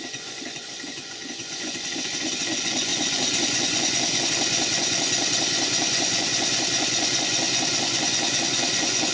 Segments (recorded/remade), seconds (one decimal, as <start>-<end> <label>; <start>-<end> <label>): 0.0-9.1 remade